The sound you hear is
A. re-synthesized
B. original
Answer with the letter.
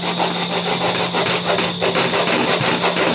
B